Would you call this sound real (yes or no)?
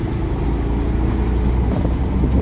yes